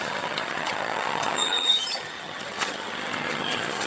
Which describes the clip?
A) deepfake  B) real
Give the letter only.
A